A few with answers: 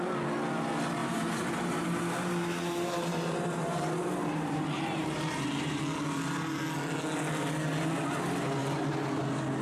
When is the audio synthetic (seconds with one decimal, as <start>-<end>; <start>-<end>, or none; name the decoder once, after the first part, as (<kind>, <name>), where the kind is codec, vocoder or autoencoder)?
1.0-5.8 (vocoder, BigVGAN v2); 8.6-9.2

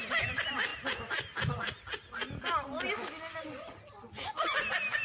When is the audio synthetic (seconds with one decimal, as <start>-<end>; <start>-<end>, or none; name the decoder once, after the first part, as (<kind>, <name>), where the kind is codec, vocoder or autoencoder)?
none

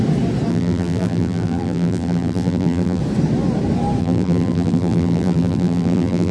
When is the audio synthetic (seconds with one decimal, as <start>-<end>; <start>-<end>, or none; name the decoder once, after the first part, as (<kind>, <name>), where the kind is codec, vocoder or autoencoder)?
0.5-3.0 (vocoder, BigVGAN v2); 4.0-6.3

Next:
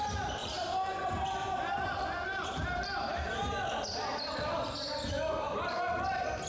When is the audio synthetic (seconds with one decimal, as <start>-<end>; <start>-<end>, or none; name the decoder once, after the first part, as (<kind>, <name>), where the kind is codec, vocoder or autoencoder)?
0.4-3.5 (vocoder, BigVGAN v2)

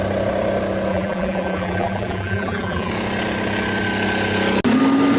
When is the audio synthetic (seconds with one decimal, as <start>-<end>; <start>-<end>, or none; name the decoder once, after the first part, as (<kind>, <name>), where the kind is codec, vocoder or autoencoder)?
0.9-2.9 (vocoder, BigVGAN v2)